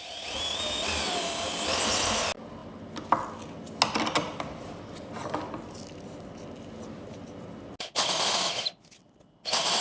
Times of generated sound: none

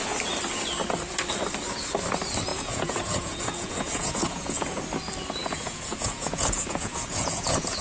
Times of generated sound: 2.5-4.8 (vocoder, Vocos); 5.4-7.8